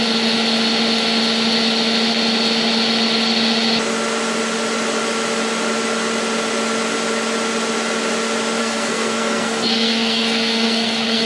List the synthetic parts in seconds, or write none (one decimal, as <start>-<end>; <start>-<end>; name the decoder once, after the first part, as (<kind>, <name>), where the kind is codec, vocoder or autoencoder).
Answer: 8.6-11.3 (codec, SNAC)